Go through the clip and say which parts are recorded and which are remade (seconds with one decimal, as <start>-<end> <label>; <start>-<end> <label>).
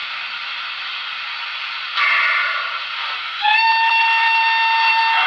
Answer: 0.0-3.2 recorded; 3.2-3.7 remade; 3.7-5.3 recorded